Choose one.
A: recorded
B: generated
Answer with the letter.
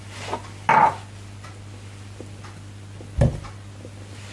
A